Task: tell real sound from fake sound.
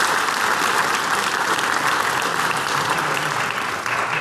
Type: real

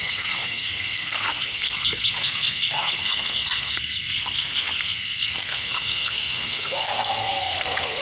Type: fake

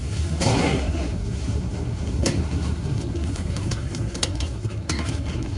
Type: fake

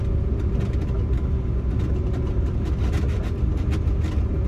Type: real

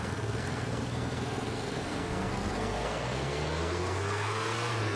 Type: fake